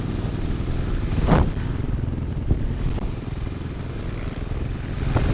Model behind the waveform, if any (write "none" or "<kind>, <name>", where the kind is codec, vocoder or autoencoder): none